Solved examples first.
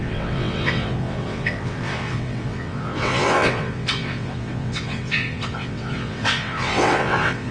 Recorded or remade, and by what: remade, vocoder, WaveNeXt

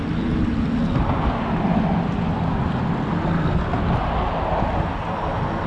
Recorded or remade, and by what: recorded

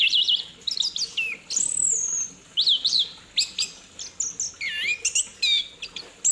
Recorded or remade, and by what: recorded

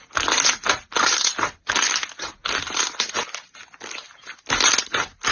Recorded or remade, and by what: recorded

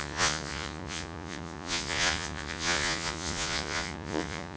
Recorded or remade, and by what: remade, vocoder, Vocos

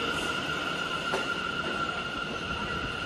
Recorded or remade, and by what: remade, vocoder, BigVGAN v2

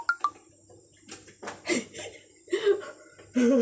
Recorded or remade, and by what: recorded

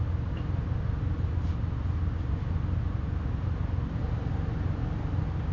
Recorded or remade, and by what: recorded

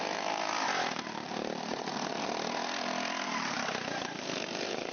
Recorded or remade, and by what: remade, vocoder, BigVGAN v2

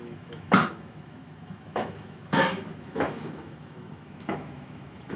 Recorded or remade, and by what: remade, autoencoder, DAC-VAE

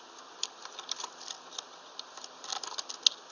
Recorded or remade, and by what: recorded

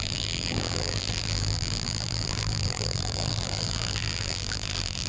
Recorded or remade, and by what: remade, vocoder, BigVGAN v2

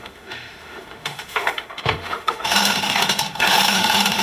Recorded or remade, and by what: remade, autoencoder, DAC-VAE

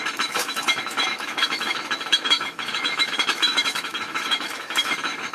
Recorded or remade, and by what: remade, autoencoder, DAC-VAE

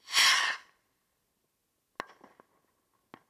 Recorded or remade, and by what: recorded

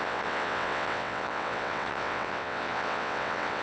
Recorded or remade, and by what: remade, vocoder, WaveNeXt